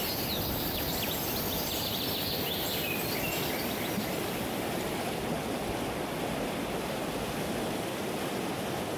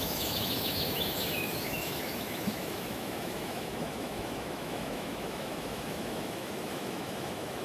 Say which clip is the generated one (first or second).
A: second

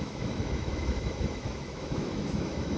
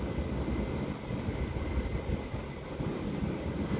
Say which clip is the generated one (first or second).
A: first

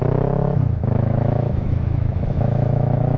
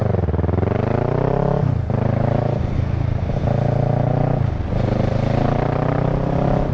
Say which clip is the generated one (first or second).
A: first